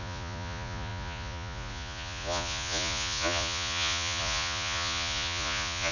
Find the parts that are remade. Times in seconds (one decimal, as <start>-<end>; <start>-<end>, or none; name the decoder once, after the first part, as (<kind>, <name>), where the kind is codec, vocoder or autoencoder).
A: 0.0-5.9 (vocoder, Vocos)